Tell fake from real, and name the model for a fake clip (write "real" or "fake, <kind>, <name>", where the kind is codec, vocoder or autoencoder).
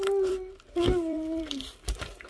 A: fake, vocoder, BigVGAN v2